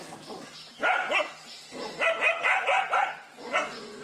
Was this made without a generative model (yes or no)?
yes